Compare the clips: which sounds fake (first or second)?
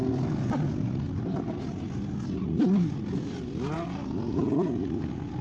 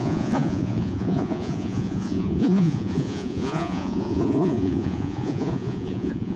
second